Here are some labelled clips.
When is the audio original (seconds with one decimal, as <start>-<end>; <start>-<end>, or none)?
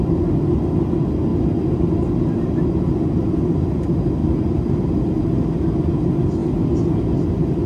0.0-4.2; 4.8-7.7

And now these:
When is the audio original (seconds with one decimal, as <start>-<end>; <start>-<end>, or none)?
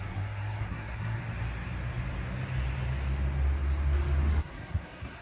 1.2-4.3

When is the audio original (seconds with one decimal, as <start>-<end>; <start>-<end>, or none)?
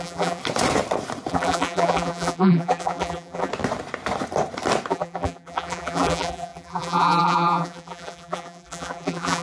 0.4-1.3; 3.5-4.9